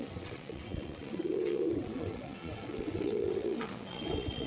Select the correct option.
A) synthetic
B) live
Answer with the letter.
A